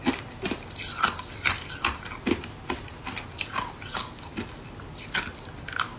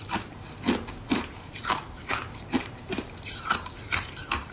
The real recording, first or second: first